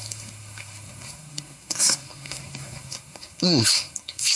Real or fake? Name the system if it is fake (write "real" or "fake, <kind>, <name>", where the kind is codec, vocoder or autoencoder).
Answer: fake, codec, SNAC